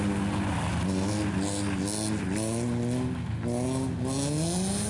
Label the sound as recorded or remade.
recorded